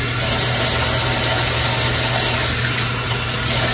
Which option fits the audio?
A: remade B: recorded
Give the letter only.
B